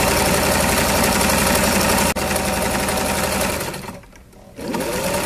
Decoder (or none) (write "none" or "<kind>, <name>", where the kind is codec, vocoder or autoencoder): none